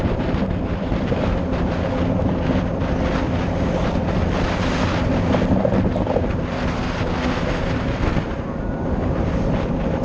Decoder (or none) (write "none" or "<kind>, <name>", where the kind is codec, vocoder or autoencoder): none